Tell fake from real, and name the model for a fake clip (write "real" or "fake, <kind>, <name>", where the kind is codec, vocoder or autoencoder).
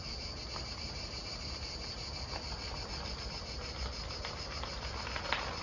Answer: real